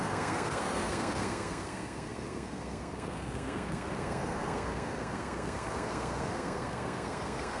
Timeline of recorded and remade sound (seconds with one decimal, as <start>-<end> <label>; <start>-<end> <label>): 0.0-7.6 remade

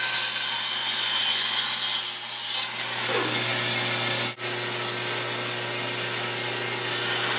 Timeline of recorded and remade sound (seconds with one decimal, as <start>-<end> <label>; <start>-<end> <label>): 0.0-0.8 recorded; 0.8-1.7 remade; 1.7-7.4 recorded

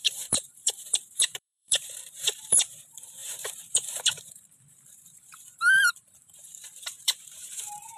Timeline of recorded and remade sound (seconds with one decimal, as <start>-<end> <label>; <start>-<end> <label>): 0.0-8.0 remade

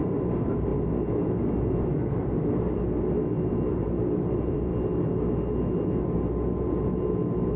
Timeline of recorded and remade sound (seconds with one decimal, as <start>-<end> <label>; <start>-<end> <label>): 0.0-0.7 remade; 0.7-3.7 recorded; 3.7-4.7 remade; 4.7-7.6 recorded

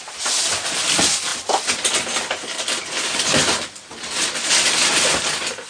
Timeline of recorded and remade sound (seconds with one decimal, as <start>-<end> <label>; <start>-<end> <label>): 0.0-5.7 recorded

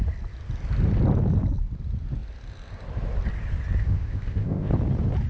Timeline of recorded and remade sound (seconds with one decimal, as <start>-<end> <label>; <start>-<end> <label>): 0.0-3.8 recorded; 3.8-4.7 remade; 4.7-5.3 recorded

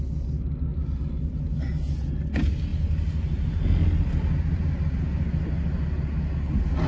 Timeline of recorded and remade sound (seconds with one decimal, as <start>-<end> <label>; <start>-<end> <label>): 0.0-6.9 recorded

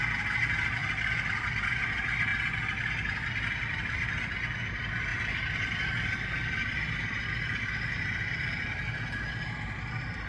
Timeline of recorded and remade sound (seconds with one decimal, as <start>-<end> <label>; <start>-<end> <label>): 0.0-0.8 recorded; 0.8-1.9 remade; 1.9-2.3 recorded; 2.3-4.3 remade; 4.3-5.1 recorded; 5.1-8.8 remade; 8.8-10.3 recorded